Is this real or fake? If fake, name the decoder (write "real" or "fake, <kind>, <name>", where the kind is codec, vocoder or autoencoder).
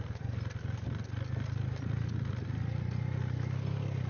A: real